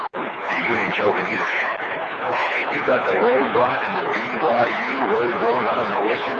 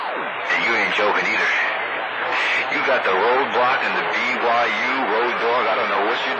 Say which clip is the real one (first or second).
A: second